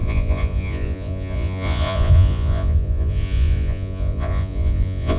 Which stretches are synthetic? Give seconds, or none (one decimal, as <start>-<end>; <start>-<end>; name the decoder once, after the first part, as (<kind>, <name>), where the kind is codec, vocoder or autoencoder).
0.0-5.2 (vocoder, Vocos)